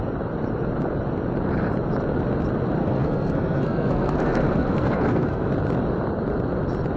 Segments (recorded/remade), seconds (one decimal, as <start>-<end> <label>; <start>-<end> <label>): 0.0-2.8 recorded; 2.8-5.5 remade; 5.5-7.0 recorded

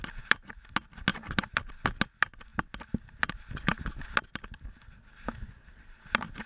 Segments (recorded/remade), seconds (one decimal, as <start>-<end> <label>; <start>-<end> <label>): 0.0-6.5 recorded

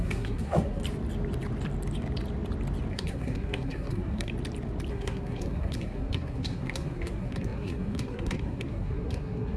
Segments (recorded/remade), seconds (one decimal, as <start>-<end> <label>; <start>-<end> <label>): 0.0-0.8 remade; 0.8-2.9 recorded; 2.9-4.3 remade; 4.3-4.9 recorded; 4.9-9.6 remade

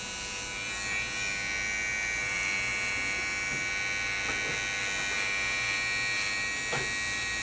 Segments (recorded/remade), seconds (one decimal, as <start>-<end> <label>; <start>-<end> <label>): 0.0-7.4 recorded

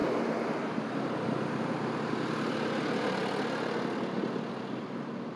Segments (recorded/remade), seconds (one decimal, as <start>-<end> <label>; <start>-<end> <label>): 0.0-5.4 recorded

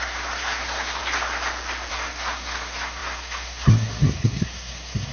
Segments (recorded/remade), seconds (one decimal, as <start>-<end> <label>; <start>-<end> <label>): 0.0-1.0 remade; 1.0-1.9 recorded; 1.9-5.1 remade